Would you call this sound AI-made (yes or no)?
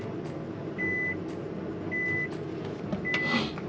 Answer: no